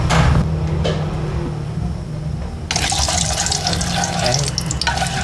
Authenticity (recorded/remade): recorded